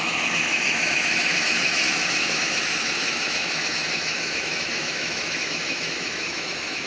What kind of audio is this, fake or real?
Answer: fake